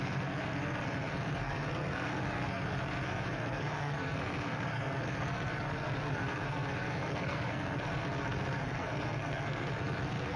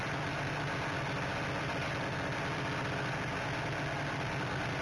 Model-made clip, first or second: first